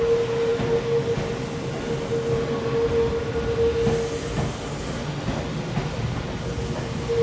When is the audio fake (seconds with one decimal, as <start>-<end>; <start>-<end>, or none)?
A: none